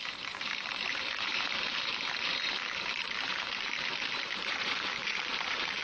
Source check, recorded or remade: remade